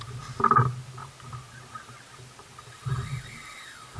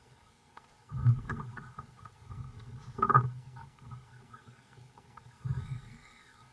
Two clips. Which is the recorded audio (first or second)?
first